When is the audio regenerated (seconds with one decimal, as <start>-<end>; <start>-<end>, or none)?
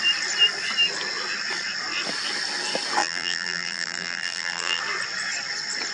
3.0-4.8